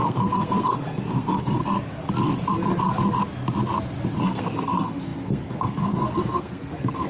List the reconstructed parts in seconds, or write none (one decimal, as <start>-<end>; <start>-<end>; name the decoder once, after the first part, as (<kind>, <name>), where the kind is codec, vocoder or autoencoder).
0.0-1.6 (codec, SNAC); 4.2-7.1

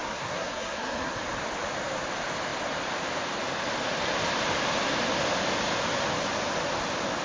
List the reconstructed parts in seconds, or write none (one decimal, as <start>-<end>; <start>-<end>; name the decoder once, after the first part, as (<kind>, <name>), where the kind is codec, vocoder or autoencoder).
0.0-1.2 (codec, SNAC)

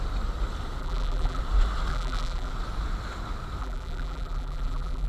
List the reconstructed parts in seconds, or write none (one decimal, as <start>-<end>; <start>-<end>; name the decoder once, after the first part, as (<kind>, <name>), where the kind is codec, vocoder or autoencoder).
0.8-1.4 (vocoder, BigVGAN v2); 1.9-2.5; 3.6-5.1

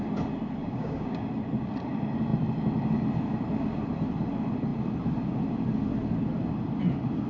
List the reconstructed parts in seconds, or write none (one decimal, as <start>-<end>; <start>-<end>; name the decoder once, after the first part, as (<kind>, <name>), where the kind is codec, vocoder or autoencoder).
0.6-1.3 (codec, DAC)

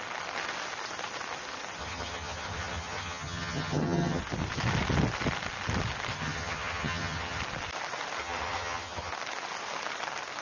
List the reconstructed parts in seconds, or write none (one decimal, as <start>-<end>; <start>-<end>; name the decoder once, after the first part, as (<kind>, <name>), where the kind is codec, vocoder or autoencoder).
1.8-4.2 (vocoder, HiFi-GAN); 6.1-7.4; 8.2-9.1